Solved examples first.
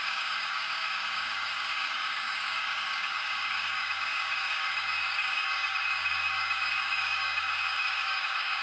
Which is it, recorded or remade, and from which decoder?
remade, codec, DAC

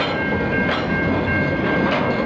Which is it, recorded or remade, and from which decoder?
recorded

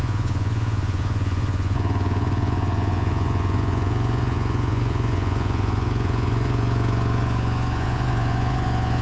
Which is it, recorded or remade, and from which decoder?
remade, vocoder, Vocos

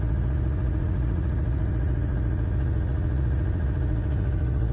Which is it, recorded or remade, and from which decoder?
remade, vocoder, Vocos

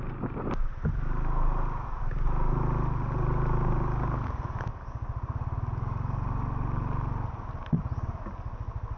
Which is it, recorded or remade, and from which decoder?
recorded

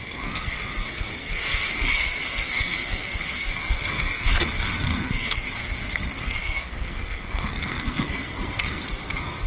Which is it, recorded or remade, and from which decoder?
remade, codec, SNAC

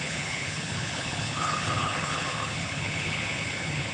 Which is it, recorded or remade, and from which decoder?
remade, codec, HILCodec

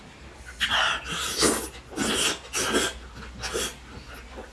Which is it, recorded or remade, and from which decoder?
recorded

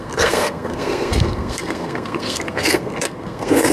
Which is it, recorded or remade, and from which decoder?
remade, codec, SNAC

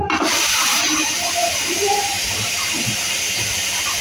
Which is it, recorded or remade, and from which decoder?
remade, vocoder, BigVGAN v2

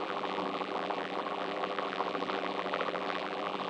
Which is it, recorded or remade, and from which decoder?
remade, vocoder, BigVGAN v2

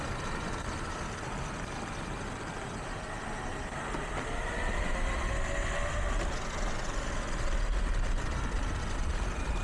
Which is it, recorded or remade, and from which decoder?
recorded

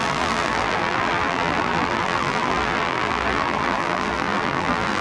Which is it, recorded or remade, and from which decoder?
remade, vocoder, BigVGAN v2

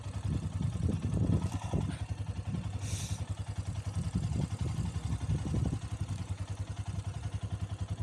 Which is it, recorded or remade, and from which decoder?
recorded